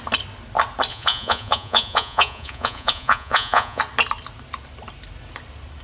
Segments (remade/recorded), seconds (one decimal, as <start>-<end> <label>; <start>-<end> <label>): 0.0-0.9 recorded; 0.9-3.8 remade; 3.8-5.8 recorded